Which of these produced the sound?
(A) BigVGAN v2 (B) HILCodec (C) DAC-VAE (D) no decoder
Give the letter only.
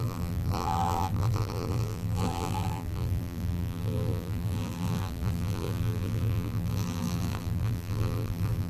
A